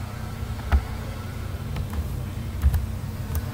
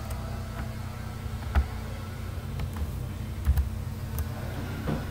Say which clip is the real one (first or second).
second